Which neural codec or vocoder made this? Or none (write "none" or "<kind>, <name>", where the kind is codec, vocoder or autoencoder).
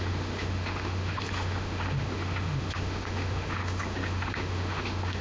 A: autoencoder, DAC-VAE